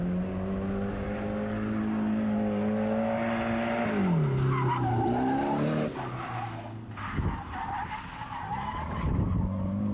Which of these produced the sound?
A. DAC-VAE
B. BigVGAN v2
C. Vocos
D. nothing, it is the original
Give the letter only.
D